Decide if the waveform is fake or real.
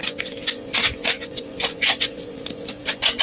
fake